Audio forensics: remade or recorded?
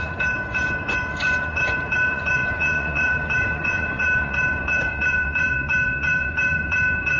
remade